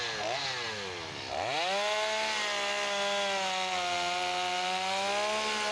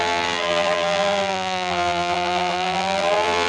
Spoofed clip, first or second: second